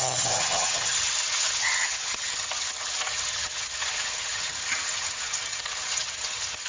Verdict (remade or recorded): remade